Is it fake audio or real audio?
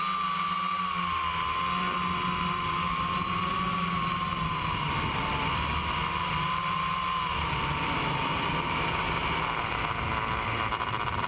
real